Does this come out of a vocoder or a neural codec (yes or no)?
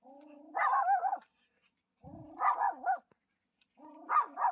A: no